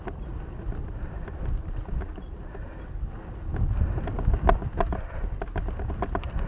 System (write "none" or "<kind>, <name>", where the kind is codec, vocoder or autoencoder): none